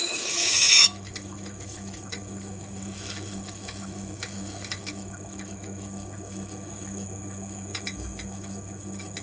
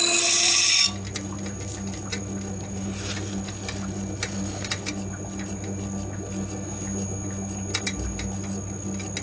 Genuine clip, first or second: second